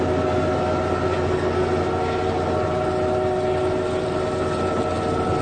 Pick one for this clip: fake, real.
real